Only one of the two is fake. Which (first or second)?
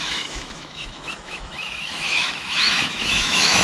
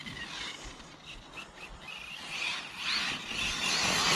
first